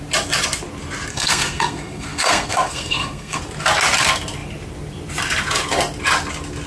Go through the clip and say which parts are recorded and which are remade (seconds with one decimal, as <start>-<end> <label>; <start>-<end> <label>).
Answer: 0.0-1.1 recorded; 1.1-3.4 remade; 3.4-6.7 recorded